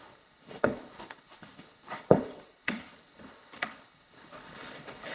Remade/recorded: remade